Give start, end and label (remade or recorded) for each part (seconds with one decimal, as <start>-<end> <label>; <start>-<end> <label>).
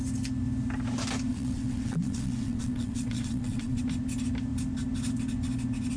0.0-1.3 recorded; 1.3-3.8 remade; 3.8-6.0 recorded